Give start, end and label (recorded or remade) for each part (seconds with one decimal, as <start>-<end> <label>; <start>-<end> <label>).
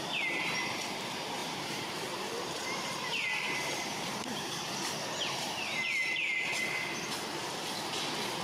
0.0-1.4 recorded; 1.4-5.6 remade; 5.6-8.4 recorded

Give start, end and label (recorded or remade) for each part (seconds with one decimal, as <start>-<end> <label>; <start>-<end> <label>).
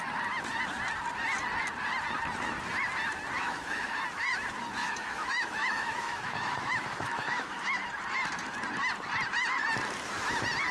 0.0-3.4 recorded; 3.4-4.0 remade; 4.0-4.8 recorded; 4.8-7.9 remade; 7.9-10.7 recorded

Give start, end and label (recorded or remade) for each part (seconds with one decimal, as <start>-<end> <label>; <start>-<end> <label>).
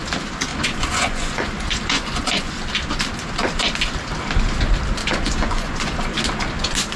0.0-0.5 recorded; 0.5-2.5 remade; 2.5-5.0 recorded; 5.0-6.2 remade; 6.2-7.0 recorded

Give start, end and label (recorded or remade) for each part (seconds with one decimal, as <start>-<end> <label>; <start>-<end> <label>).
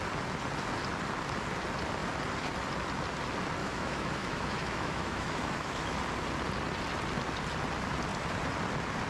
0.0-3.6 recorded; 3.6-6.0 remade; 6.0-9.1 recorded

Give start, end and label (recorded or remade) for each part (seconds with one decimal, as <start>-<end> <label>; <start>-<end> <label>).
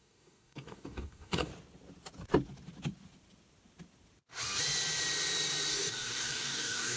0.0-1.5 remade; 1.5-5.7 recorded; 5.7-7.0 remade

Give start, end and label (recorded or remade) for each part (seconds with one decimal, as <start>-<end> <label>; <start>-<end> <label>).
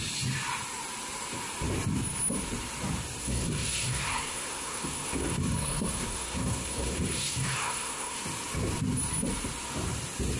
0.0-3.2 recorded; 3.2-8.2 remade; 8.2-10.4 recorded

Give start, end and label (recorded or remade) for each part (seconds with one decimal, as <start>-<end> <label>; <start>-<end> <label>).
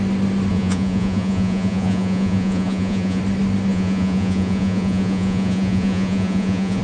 0.0-0.5 recorded; 0.5-3.2 remade; 3.2-3.7 recorded; 3.7-6.8 remade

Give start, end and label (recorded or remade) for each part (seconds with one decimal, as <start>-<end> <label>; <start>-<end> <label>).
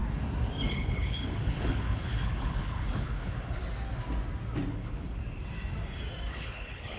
0.0-0.7 recorded; 0.7-3.6 remade; 3.6-4.7 recorded; 4.7-5.2 remade; 5.2-6.3 recorded; 6.3-7.0 remade